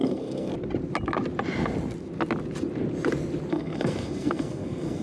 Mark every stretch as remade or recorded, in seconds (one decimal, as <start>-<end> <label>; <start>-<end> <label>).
0.0-0.5 remade; 0.5-3.5 recorded; 3.5-5.0 remade